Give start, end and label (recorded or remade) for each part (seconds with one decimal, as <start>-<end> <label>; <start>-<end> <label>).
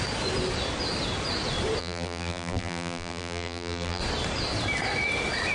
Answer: 0.0-1.8 recorded; 1.8-4.0 remade; 4.0-5.5 recorded